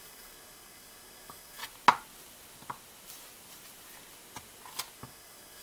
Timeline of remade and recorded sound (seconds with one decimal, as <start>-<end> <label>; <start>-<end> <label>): 0.0-1.6 remade; 1.6-5.0 recorded; 5.0-5.6 remade